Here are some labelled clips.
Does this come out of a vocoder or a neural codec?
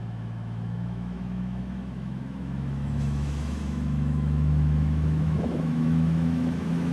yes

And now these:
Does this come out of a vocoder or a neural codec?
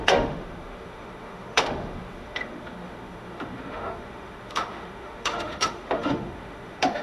yes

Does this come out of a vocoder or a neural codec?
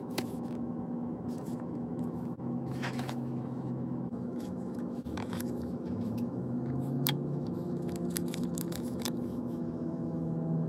yes